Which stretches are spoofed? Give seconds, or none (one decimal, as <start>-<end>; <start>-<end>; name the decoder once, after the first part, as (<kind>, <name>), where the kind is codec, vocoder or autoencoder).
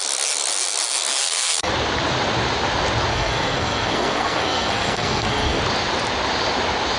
1.2-1.7 (codec, SNAC); 3.1-5.6